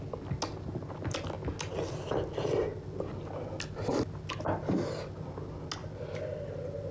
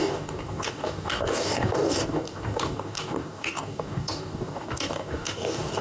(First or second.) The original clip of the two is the first